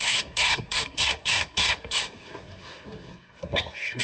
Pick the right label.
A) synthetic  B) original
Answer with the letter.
A